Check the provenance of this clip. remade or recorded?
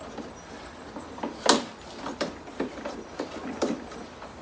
recorded